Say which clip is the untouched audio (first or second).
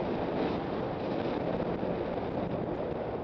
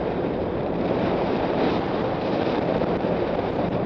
first